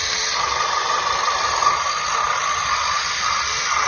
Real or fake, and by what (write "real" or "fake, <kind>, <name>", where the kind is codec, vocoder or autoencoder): real